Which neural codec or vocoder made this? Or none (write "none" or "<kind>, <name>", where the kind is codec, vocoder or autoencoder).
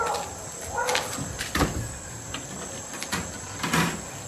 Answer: none